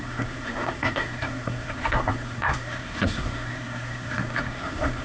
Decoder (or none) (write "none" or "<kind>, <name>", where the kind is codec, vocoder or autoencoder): codec, SNAC